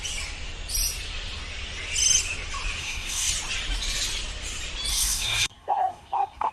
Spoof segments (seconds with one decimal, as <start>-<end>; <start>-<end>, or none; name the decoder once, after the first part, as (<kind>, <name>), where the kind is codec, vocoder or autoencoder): 2.8-3.3 (codec, SNAC); 4.9-6.5